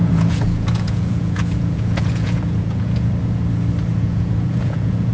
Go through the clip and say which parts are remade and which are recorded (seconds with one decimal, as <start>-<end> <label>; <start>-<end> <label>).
0.0-3.1 remade; 3.1-3.9 recorded; 3.9-5.1 remade